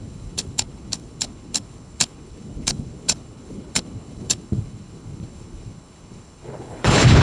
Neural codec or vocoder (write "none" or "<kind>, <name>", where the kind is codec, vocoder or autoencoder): codec, HILCodec